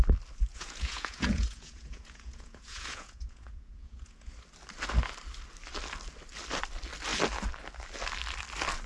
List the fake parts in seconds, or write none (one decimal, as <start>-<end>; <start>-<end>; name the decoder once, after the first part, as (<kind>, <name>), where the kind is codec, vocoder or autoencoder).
0.5-4.3 (vocoder, Vocos)